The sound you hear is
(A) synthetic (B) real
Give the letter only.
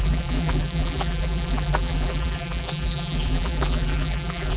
A